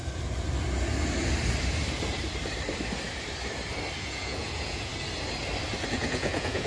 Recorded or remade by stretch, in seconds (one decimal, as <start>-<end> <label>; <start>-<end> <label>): 0.0-4.0 recorded; 4.0-4.9 remade; 4.9-5.9 recorded; 5.9-6.7 remade